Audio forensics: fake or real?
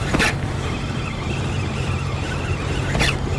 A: fake